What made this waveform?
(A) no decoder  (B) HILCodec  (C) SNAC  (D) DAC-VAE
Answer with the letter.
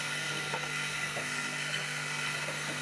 C